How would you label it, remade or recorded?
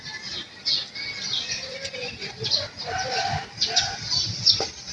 recorded